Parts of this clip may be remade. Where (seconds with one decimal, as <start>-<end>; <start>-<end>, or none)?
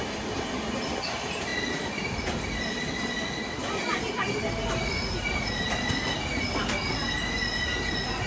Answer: none